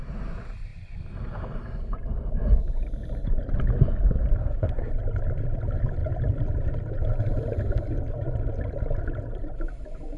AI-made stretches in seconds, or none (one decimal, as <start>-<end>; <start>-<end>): 4.4-4.9